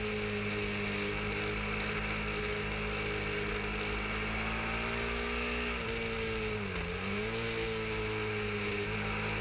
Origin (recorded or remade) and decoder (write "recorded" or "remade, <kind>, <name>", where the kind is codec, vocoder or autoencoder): recorded